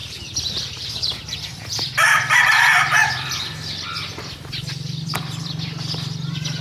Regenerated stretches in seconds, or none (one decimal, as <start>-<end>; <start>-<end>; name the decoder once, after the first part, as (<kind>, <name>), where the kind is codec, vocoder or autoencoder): 0.0-6.6 (vocoder, BigVGAN v2)